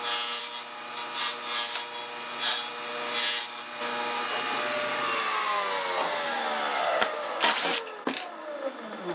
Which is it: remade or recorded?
recorded